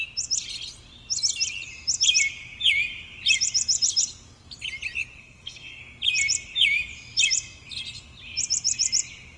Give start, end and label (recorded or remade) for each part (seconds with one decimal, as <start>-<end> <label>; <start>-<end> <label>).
0.0-5.2 recorded; 5.2-5.8 remade; 5.8-9.4 recorded